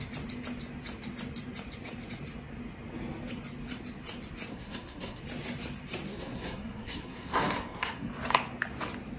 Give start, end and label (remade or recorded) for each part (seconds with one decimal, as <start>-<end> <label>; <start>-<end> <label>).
0.0-4.5 recorded; 4.5-5.2 remade; 5.2-6.1 recorded; 6.1-8.1 remade; 8.1-9.2 recorded